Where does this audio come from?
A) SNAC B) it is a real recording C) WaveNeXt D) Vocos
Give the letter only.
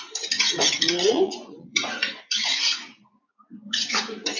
D